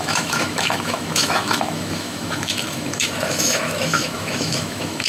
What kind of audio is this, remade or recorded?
remade